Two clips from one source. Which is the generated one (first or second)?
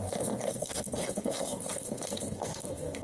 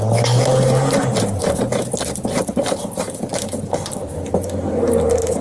first